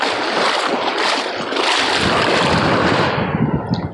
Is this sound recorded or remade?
recorded